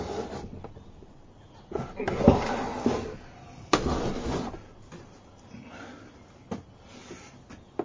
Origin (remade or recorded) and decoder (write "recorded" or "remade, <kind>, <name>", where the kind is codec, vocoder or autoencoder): recorded